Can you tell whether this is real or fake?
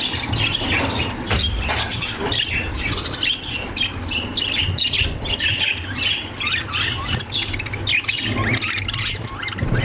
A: real